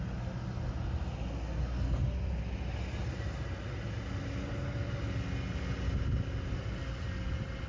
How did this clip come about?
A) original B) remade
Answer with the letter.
A